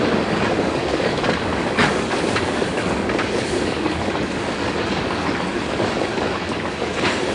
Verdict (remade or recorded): remade